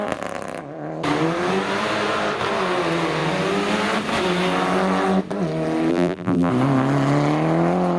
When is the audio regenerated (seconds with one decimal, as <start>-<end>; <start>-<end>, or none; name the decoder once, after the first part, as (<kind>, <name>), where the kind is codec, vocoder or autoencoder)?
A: 5.9-6.5 (vocoder, BigVGAN v2)